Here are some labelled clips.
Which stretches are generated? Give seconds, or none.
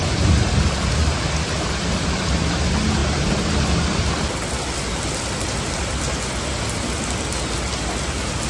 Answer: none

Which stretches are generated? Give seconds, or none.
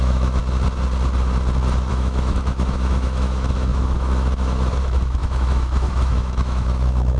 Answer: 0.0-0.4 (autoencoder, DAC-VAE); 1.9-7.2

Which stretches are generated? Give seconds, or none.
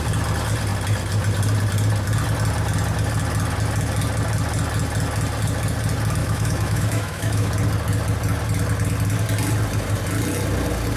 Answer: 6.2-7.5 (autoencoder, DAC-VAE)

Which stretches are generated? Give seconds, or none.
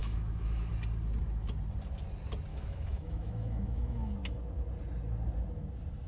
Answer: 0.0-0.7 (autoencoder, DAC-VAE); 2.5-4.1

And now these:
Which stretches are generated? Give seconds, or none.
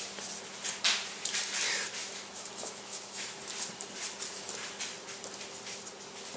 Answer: 2.0-3.4 (autoencoder, DAC-VAE)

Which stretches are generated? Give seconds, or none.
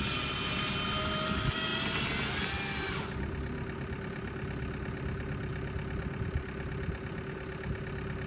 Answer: none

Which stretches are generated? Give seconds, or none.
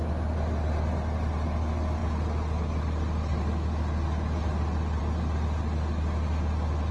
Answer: none